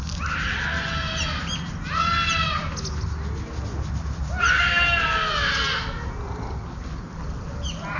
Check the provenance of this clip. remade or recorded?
recorded